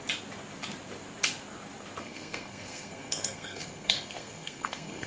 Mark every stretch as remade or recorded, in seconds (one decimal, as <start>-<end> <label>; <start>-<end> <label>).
0.0-2.0 recorded; 2.0-5.1 remade